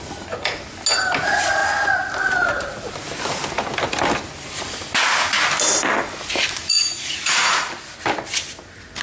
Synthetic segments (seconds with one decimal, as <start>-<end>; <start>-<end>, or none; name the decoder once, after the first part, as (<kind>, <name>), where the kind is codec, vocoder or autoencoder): 6.6-7.6 (vocoder, Vocos)